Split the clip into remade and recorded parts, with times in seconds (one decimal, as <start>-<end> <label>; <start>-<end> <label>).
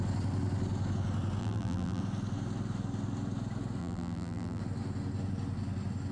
0.0-1.4 recorded; 1.4-2.0 remade; 2.0-3.8 recorded; 3.8-4.6 remade; 4.6-6.1 recorded